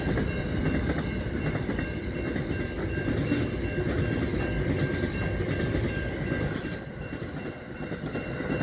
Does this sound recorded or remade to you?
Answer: recorded